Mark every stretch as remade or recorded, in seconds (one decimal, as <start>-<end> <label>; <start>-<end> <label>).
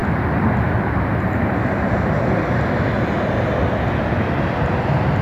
0.0-5.2 recorded